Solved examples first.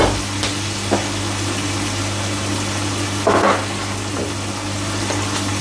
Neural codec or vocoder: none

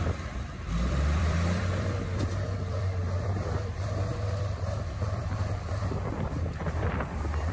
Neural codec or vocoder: vocoder, BigVGAN v2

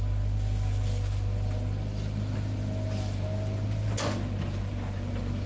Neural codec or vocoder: none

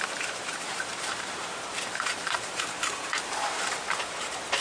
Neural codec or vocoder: vocoder, BigVGAN v2